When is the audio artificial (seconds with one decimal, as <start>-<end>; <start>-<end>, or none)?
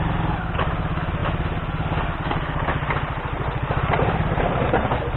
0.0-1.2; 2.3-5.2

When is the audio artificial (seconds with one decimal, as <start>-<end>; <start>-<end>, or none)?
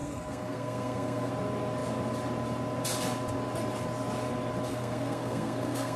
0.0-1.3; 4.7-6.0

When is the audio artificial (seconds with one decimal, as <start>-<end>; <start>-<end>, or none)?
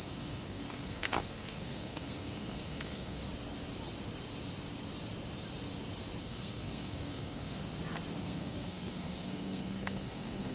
0.0-3.2; 6.2-7.6; 8.2-10.5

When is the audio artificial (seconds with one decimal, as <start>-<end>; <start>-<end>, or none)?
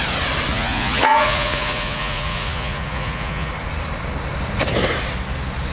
0.5-3.5